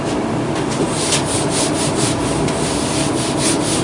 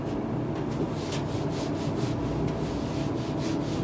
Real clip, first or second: second